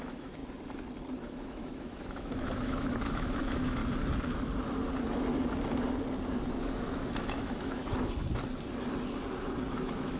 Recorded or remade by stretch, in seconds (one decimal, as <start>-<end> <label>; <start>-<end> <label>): 0.0-0.4 remade; 0.4-1.2 recorded; 1.2-3.8 remade; 3.8-6.6 recorded; 6.6-7.8 remade; 7.8-9.7 recorded; 9.7-10.2 remade